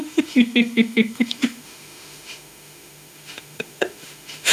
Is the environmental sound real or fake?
fake